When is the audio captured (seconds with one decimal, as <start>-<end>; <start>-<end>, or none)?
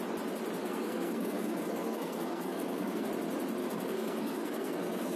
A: 0.0-0.6; 3.1-3.6